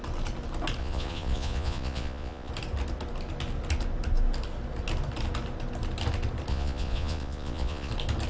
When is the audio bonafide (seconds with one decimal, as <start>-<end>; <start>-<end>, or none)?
0.0-0.8; 2.5-6.5; 7.9-8.3